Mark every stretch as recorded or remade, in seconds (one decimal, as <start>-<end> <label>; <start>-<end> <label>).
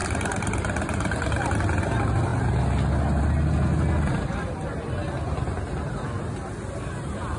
0.0-7.4 recorded